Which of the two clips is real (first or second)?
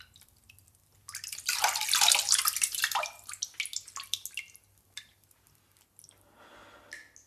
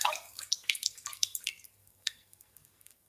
first